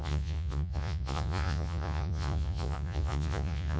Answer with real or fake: fake